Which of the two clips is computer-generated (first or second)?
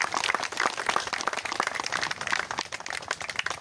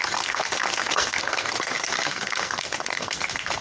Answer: second